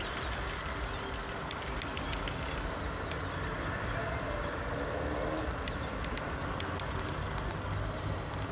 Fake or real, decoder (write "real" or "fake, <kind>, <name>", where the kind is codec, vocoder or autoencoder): real